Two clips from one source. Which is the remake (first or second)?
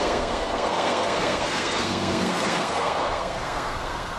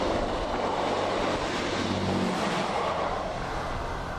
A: first